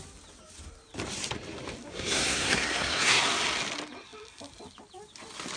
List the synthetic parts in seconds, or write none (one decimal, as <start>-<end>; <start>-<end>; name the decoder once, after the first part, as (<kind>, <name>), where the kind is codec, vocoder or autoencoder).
1.9-3.2 (codec, SNAC)